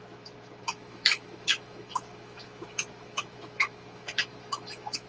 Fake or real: fake